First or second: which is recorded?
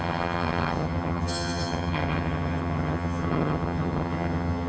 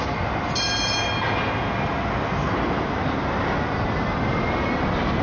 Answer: second